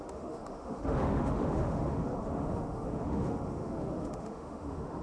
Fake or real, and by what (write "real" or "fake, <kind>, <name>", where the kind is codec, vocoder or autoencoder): fake, autoencoder, DAC-VAE